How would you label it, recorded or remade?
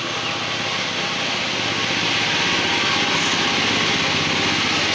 recorded